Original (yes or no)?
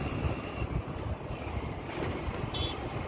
yes